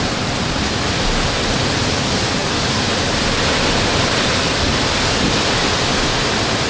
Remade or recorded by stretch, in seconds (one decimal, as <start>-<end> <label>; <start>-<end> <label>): 0.0-6.7 recorded